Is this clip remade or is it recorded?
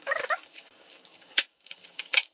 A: remade